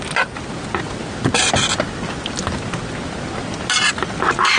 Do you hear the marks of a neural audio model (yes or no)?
no